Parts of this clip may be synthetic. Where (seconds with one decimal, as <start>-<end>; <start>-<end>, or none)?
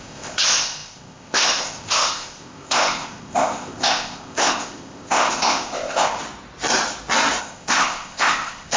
0.0-6.2; 7.4-8.8